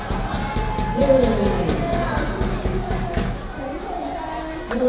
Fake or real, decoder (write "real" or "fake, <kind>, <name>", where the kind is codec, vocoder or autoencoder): real